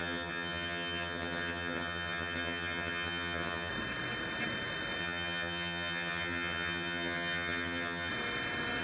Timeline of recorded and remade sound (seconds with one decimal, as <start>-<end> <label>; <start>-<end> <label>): 0.0-3.7 remade; 3.7-5.0 recorded; 5.0-8.1 remade; 8.1-8.8 recorded